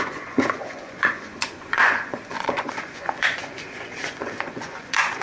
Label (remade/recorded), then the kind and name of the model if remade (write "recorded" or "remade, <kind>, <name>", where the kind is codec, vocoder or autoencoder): remade, vocoder, Vocos